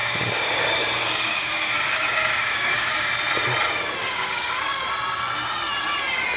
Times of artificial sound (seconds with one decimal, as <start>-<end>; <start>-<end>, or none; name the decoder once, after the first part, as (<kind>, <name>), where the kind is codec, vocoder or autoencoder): 0.0-3.1 (codec, DAC); 4.0-4.8